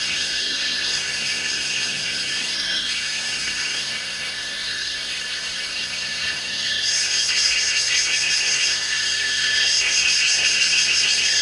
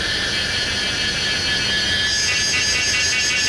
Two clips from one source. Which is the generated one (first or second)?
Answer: first